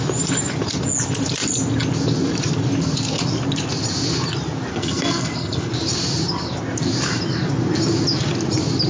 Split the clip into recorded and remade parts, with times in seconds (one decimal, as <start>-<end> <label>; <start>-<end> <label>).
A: 0.0-4.7 recorded; 4.7-5.7 remade; 5.7-8.9 recorded

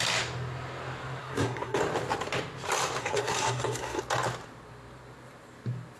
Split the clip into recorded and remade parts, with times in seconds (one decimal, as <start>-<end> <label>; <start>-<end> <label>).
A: 0.0-1.2 recorded; 1.2-1.8 remade; 1.8-3.0 recorded; 3.0-4.0 remade; 4.0-6.0 recorded

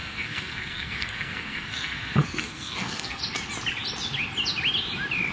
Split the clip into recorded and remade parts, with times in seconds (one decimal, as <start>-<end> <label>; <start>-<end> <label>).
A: 0.0-3.2 remade; 3.2-5.3 recorded

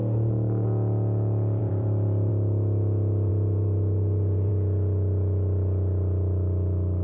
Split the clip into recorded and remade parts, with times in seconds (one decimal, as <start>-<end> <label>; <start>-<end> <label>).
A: 0.0-1.6 recorded; 1.6-2.3 remade; 2.3-3.3 recorded; 3.3-4.5 remade; 4.5-7.0 recorded

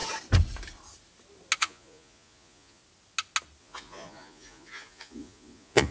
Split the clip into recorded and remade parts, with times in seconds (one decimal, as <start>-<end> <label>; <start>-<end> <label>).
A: 0.0-1.6 recorded; 1.6-2.8 remade; 2.8-3.6 recorded; 3.6-5.9 remade

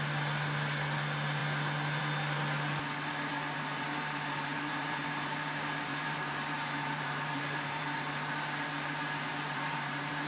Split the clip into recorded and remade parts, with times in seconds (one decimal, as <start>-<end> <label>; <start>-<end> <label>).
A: 0.0-3.3 recorded; 3.3-8.3 remade; 8.3-9.3 recorded; 9.3-10.3 remade

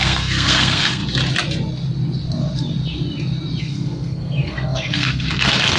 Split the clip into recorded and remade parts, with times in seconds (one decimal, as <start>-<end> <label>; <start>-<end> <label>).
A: 0.0-1.0 remade; 1.0-3.6 recorded; 3.6-5.8 remade

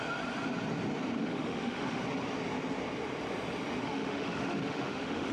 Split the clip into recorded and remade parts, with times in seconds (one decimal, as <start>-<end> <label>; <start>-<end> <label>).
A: 0.0-1.2 recorded; 1.2-2.0 remade; 2.0-3.8 recorded; 3.8-5.3 remade